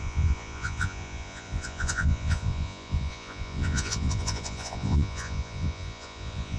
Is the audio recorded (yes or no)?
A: no